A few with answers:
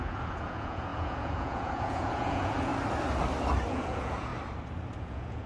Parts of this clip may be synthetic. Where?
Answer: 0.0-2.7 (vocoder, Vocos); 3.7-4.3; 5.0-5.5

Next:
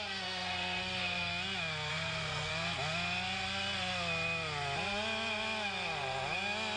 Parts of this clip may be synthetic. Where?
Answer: 0.0-1.3 (codec, SNAC); 1.9-2.5

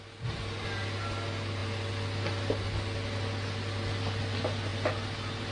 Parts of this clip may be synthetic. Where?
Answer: none